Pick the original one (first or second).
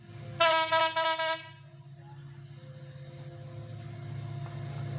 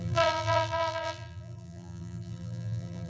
first